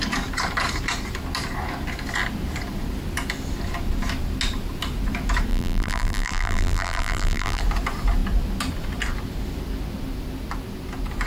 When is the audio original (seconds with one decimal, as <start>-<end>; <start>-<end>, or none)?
0.0-5.5; 7.6-11.3